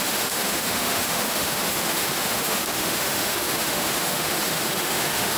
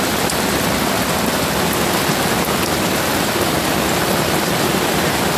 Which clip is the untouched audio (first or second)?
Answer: second